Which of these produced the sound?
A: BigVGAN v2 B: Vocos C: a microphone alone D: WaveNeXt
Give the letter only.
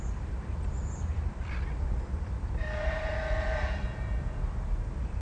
A